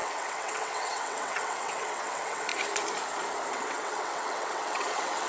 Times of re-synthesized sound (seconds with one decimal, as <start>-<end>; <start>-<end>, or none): 0.0-2.5; 3.5-5.3